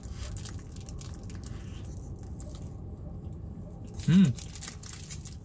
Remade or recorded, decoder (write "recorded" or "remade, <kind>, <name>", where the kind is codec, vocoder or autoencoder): recorded